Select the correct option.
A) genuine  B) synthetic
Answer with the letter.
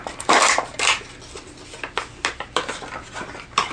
A